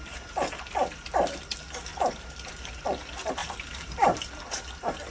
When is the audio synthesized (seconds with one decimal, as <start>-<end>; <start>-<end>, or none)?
1.9-2.8; 3.4-4.3